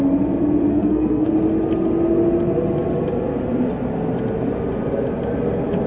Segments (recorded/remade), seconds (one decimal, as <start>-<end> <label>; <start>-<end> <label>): 0.0-0.7 recorded; 0.7-1.3 remade; 1.3-5.9 recorded